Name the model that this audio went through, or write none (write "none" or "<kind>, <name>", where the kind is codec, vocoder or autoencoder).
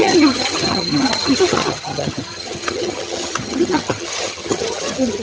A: vocoder, HiFi-GAN